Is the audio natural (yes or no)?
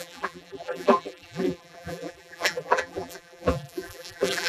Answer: no